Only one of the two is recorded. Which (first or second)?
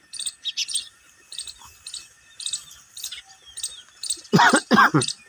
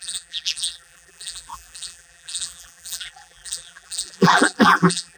first